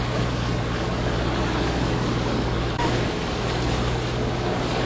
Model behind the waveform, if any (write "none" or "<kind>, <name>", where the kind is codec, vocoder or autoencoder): codec, DAC